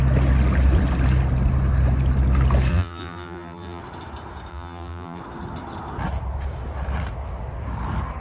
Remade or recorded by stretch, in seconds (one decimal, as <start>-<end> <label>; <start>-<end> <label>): 0.0-2.7 recorded; 2.7-3.8 remade; 3.8-4.5 recorded; 4.5-5.2 remade; 5.2-8.2 recorded